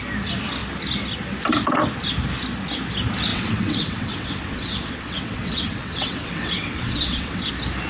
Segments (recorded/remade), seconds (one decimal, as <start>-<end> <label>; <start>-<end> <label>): 0.0-3.3 recorded; 3.3-7.5 remade; 7.5-7.9 recorded

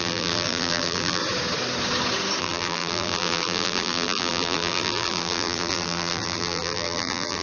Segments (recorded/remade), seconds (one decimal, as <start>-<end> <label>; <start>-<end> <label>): 0.0-1.2 remade; 1.2-2.4 recorded; 2.4-7.4 remade